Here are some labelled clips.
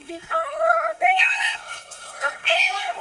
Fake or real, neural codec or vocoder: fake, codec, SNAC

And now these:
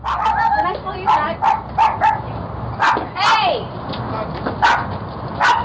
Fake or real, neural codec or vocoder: real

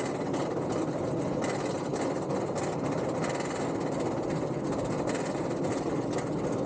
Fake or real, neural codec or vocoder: real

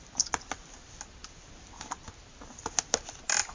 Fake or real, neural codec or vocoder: real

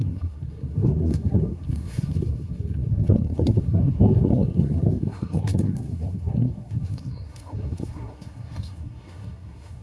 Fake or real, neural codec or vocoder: fake, codec, SNAC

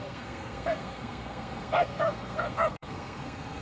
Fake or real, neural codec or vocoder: fake, codec, SNAC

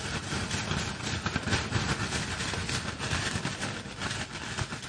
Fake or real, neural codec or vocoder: real